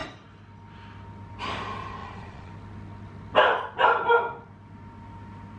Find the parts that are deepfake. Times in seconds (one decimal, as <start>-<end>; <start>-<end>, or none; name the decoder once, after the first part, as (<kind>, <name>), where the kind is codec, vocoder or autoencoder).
2.0-2.5 (vocoder, Vocos)